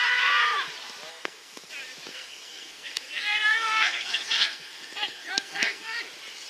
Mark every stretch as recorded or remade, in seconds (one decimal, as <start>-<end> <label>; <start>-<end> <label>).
0.0-1.1 recorded; 1.1-1.7 remade; 1.7-2.1 recorded; 2.1-6.0 remade; 6.0-6.5 recorded